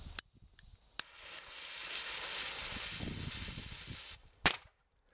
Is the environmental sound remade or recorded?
recorded